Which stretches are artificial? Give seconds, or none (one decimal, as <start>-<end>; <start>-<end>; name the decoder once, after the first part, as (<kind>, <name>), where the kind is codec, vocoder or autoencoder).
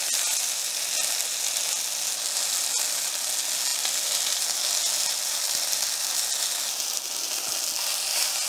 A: none